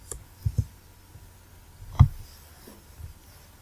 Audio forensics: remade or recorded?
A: recorded